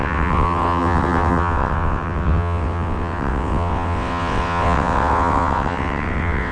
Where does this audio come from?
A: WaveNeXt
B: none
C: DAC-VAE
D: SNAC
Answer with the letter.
A